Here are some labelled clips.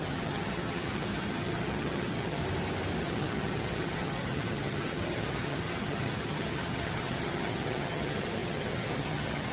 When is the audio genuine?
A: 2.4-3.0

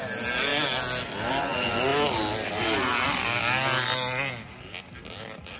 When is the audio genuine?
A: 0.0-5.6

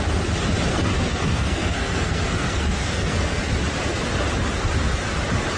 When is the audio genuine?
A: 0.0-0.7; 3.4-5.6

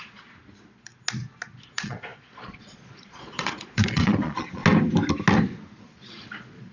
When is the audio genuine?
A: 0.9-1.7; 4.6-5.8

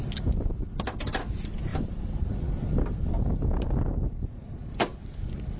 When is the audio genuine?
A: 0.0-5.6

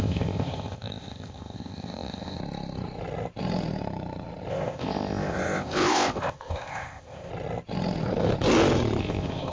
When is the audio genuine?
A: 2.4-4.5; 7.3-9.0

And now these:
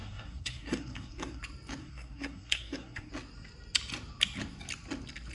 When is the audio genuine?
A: 1.4-1.8; 3.1-5.3